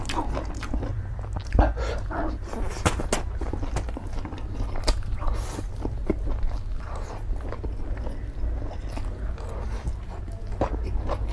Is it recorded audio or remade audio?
recorded